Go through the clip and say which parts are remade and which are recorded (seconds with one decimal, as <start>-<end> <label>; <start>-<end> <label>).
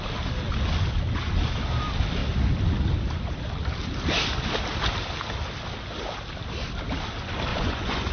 0.0-7.5 recorded; 7.5-8.1 remade